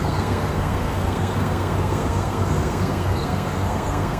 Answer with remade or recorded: remade